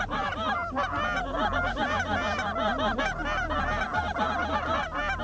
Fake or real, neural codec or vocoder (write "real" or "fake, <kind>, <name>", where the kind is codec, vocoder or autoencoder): real